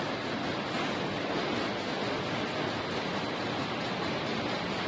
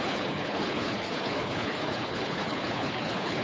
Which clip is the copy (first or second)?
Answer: second